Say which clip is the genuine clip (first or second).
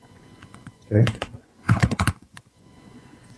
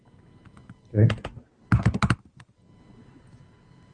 second